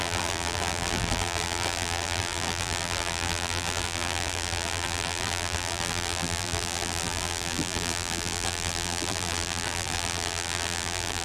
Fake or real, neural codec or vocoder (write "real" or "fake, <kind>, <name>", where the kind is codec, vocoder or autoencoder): fake, vocoder, BigVGAN v2